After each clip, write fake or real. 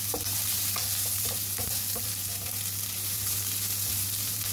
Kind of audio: fake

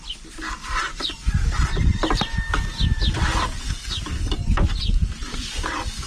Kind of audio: real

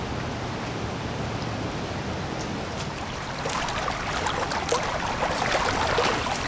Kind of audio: real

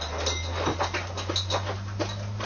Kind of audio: real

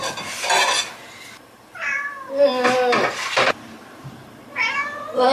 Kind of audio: real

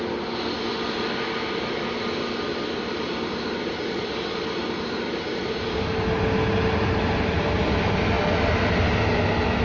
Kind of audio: real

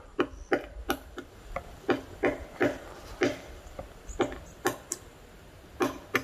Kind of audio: real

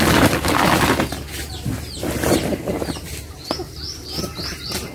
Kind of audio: real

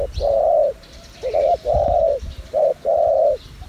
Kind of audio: fake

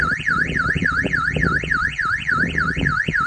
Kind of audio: fake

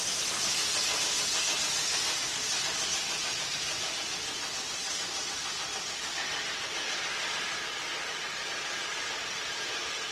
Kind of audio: real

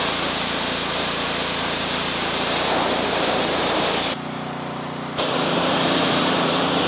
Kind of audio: fake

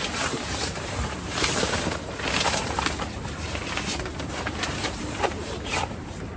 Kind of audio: fake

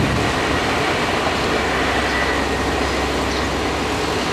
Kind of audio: real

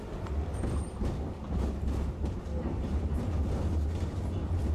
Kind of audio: real